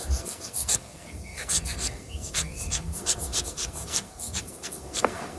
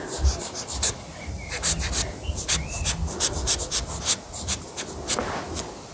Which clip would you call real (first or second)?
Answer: second